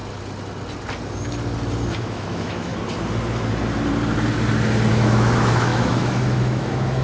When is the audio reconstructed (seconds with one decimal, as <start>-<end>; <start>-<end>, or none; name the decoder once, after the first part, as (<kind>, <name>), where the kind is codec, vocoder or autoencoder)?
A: 1.9-2.7 (autoencoder, DAC-VAE); 4.9-7.0